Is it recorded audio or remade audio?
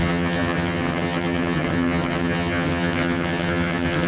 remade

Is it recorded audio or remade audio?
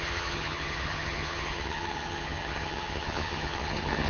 remade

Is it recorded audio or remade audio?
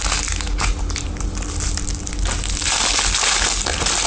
recorded